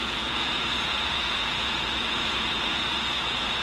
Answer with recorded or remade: remade